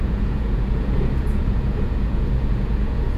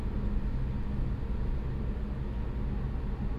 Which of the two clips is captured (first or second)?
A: second